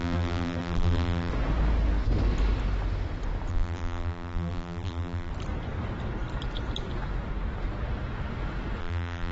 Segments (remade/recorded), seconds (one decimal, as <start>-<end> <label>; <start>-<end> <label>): 0.0-1.3 remade; 1.3-3.5 recorded; 3.5-5.3 remade; 5.3-8.8 recorded; 8.8-9.3 remade